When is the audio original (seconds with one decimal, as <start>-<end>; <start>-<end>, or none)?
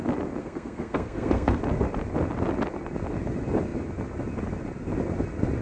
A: 0.0-0.4; 1.6-5.6